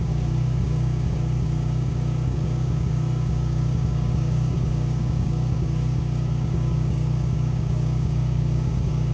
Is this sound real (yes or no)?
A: no